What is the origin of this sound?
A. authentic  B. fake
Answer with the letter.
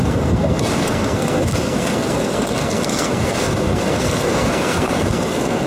B